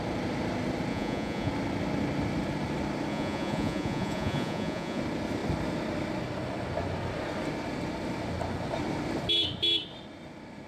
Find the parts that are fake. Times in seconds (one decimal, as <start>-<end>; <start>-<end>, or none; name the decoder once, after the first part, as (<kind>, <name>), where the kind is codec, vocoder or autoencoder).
0.9-1.5 (vocoder, Vocos); 3.1-5.0